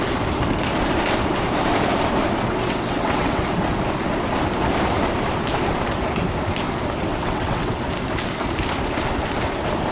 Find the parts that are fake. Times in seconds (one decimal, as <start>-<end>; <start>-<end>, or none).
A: 2.5-3.4; 7.1-7.8